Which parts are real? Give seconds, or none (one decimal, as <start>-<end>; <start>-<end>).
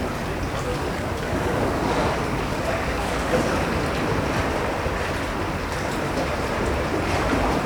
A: 0.0-0.7; 3.8-7.7